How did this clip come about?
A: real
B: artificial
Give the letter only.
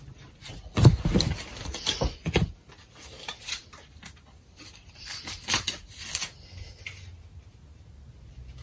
A